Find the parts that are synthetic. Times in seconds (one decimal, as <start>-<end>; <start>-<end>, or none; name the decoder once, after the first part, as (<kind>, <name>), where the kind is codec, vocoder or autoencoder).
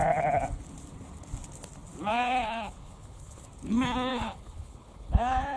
2.1-3.4 (codec, HILCodec); 4.1-5.6